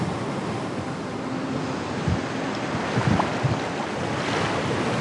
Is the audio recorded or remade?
recorded